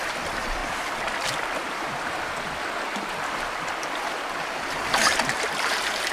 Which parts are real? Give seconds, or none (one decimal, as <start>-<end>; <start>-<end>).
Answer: 0.6-4.3